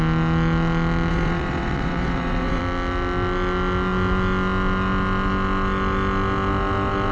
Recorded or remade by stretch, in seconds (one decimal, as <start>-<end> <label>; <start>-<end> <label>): 0.0-1.1 recorded; 1.1-2.6 remade; 2.6-7.1 recorded

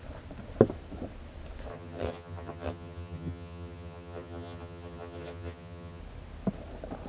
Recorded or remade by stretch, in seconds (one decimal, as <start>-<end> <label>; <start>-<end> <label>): 0.0-1.7 recorded; 1.7-6.0 remade; 6.0-7.1 recorded

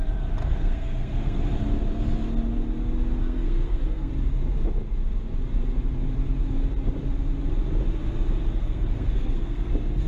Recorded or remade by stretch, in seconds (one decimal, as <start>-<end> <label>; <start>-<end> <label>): 0.0-0.4 recorded; 0.4-1.4 remade; 1.4-3.2 recorded; 3.2-4.1 remade; 4.1-8.6 recorded; 8.6-9.7 remade; 9.7-10.1 recorded